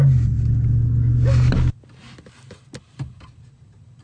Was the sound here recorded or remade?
recorded